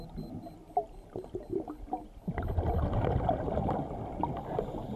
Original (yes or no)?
yes